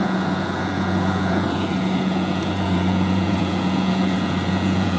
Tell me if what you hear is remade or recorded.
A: remade